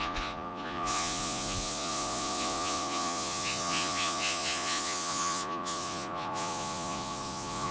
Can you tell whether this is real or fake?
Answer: fake